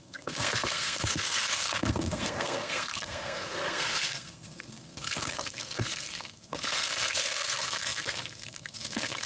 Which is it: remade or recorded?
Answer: remade